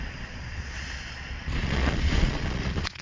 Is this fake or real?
fake